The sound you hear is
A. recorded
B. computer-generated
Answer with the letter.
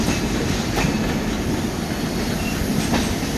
A